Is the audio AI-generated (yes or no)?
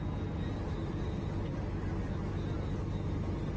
no